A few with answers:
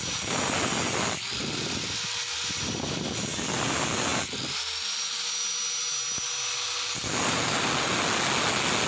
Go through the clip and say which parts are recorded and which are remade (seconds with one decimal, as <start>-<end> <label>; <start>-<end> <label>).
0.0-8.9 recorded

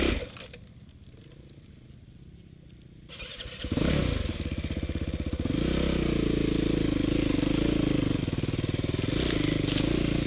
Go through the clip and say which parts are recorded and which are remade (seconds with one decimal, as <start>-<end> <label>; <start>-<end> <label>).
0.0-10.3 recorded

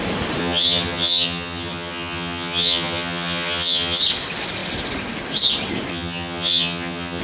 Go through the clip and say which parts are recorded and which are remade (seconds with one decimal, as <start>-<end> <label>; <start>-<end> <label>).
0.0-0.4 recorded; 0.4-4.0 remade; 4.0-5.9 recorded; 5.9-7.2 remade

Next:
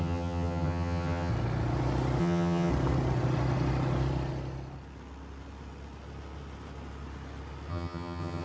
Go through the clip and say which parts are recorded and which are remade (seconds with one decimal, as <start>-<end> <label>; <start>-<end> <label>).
0.0-1.3 remade; 1.3-2.2 recorded; 2.2-2.7 remade; 2.7-7.7 recorded; 7.7-8.4 remade